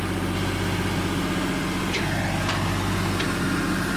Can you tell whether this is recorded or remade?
recorded